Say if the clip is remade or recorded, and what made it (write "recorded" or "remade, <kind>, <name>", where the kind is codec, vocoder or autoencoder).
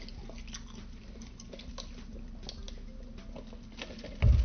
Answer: recorded